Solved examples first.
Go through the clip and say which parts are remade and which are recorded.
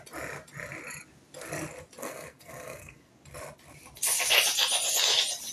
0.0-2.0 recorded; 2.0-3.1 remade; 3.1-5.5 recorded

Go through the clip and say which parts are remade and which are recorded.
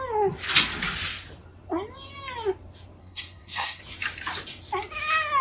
0.0-3.0 recorded; 3.0-3.8 remade; 3.8-5.4 recorded